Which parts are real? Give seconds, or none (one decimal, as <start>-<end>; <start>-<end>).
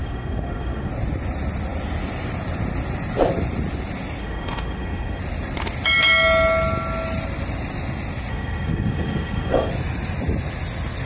0.9-4.2; 5.2-8.3; 9.7-11.1